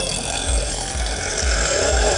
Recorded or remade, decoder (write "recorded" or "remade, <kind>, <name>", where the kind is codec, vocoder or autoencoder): remade, codec, SNAC